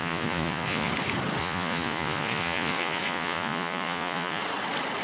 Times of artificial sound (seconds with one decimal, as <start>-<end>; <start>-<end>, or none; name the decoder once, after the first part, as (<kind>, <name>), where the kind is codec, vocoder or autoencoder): 0.0-0.9 (vocoder, Vocos); 1.4-4.4